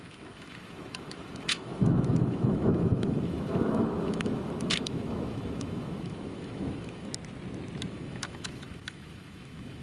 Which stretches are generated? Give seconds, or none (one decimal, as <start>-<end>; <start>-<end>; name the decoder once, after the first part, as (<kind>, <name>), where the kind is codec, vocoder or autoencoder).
0.0-7.1 (autoencoder, DAC-VAE); 7.9-9.8